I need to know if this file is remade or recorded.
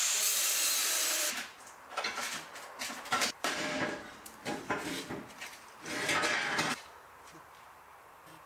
remade